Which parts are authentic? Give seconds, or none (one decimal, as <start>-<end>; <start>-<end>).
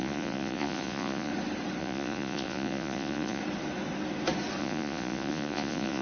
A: 1.3-1.8; 3.4-4.6